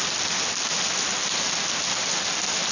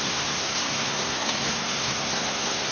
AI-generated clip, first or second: second